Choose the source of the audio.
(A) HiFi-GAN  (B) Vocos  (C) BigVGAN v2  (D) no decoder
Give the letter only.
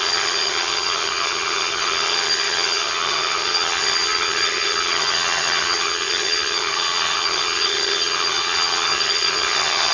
A